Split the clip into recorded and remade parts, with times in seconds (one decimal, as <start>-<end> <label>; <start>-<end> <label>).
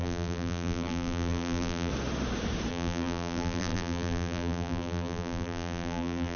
0.0-1.9 remade; 1.9-2.7 recorded; 2.7-6.4 remade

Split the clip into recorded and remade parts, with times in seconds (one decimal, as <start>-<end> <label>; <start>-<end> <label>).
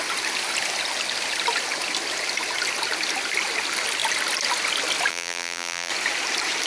0.0-5.1 recorded; 5.1-5.9 remade; 5.9-6.7 recorded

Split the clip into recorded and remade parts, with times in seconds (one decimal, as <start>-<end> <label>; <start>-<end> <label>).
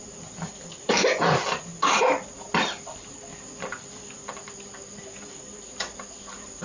0.0-6.6 recorded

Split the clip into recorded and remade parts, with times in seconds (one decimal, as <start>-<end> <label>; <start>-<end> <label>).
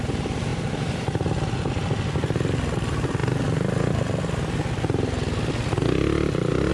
0.0-6.7 recorded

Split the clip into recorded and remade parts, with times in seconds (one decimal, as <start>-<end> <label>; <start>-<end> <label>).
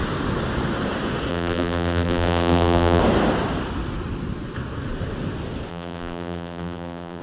0.0-1.3 recorded; 1.3-3.0 remade; 3.0-5.7 recorded; 5.7-7.2 remade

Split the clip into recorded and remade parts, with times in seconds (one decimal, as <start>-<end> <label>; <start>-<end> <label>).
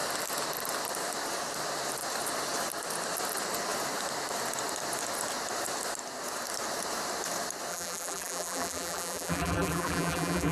0.0-7.7 recorded; 7.7-10.5 remade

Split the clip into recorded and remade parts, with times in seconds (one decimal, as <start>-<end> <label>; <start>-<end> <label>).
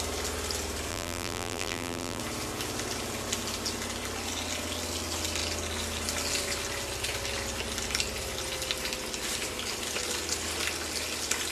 0.0-0.9 recorded; 0.9-2.2 remade; 2.2-11.5 recorded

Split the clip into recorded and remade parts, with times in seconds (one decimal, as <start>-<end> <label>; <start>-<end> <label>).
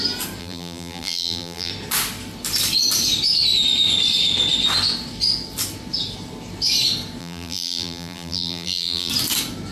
0.0-0.4 recorded; 0.4-1.7 remade; 1.7-7.2 recorded; 7.2-9.1 remade; 9.1-9.7 recorded